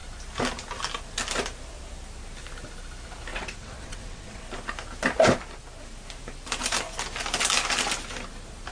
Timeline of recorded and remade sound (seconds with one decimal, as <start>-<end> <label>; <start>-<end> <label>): 0.0-3.3 recorded; 3.3-4.4 remade; 4.4-8.7 recorded